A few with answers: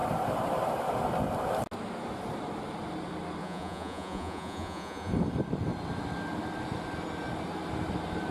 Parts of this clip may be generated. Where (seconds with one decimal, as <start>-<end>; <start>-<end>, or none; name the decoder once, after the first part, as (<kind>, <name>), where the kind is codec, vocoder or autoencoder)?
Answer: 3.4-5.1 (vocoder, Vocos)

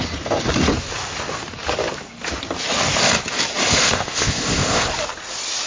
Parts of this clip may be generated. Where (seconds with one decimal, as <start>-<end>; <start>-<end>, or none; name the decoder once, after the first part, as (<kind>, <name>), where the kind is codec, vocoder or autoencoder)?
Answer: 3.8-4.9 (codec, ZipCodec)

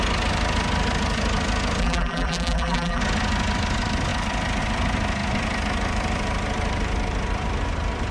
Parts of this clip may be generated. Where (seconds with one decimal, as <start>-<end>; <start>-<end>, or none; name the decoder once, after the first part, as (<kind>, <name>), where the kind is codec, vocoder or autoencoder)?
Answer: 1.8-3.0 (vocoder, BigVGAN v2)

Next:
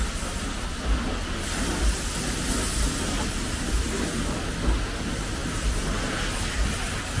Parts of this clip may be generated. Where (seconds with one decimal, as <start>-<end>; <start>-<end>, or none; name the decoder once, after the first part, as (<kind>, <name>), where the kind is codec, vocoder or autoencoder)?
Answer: none

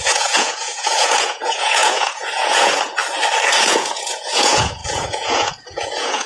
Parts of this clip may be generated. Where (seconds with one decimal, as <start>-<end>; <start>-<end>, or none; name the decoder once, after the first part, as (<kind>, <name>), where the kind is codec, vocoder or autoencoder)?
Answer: 0.0-3.0 (vocoder, Vocos); 3.6-6.3

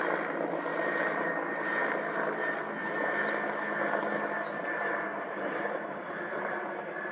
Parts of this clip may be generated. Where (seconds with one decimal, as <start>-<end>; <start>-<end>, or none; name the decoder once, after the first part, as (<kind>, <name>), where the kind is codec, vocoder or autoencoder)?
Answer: 0.7-1.3 (vocoder, BigVGAN v2); 5.1-6.5

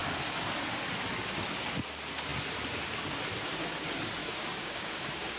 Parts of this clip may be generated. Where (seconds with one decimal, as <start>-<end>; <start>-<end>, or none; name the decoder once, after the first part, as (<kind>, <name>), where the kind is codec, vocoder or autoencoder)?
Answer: 4.2-5.4 (codec, DAC)

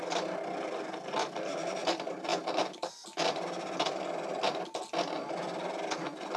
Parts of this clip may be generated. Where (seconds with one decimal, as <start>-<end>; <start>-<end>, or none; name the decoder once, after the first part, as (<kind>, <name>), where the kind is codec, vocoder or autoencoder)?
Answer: none